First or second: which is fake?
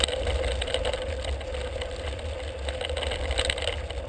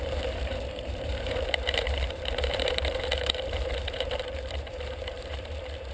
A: second